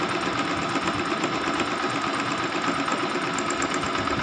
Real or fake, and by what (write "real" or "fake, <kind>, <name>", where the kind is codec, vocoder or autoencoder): real